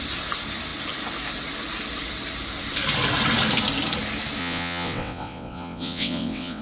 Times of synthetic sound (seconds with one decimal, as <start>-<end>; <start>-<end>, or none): 4.4-6.6

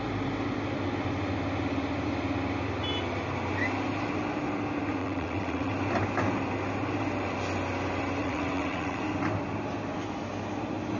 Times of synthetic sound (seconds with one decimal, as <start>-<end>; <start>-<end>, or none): 5.0-5.7; 8.2-9.0

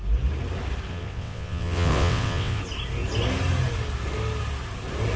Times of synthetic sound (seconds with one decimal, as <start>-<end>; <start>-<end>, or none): 0.9-2.6

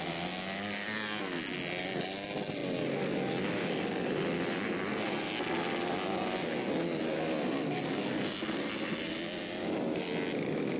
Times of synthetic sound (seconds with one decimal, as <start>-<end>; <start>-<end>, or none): none

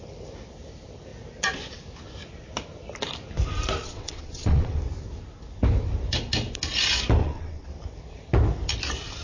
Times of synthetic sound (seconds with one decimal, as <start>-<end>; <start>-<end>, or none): 3.8-4.8; 7.2-7.7

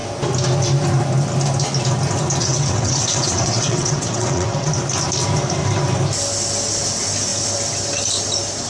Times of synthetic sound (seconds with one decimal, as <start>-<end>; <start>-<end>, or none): 2.4-4.7

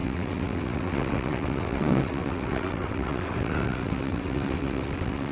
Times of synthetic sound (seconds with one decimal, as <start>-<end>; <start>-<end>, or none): 0.0-5.3

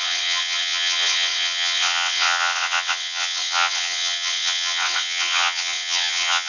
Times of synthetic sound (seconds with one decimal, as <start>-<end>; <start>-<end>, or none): 0.0-6.5